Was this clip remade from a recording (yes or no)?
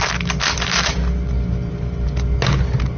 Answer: no